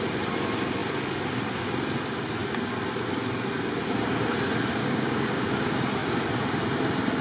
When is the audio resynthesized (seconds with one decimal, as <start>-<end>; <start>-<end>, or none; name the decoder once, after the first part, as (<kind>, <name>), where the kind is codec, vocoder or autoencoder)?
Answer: 4.8-5.5 (codec, DAC)